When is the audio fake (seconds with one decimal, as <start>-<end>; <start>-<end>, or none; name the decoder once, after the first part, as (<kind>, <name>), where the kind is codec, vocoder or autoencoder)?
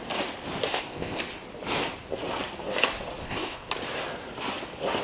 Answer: 0.7-1.2 (codec, ZipCodec); 3.2-3.7